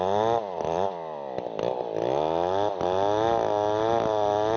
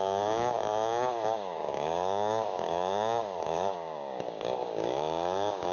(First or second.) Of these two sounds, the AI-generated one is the second